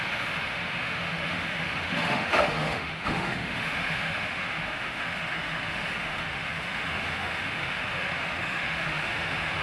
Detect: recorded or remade remade